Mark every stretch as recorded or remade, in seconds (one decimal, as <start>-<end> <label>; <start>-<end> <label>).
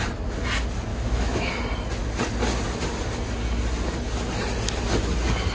0.0-0.9 recorded; 0.9-1.5 remade; 1.5-5.5 recorded